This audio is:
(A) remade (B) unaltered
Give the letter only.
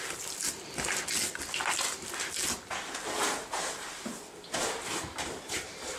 B